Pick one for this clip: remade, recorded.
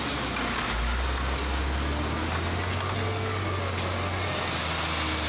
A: recorded